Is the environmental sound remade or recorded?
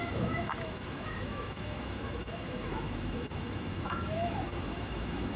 remade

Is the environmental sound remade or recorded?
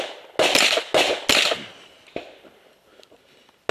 recorded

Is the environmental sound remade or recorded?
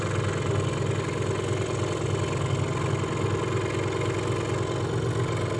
recorded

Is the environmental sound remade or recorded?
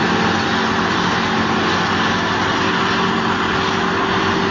recorded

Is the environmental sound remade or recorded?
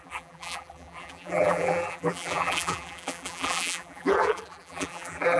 remade